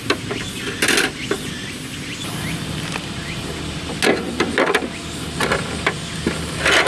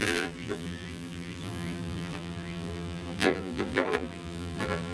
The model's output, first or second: second